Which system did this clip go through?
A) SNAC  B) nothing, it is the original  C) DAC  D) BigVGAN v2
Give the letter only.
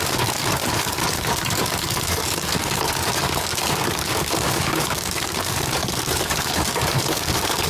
C